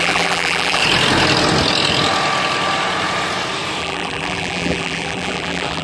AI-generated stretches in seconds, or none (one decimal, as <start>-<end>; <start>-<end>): 0.0-0.8; 3.8-5.8